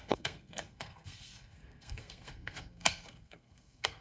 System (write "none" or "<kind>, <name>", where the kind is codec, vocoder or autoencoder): codec, SNAC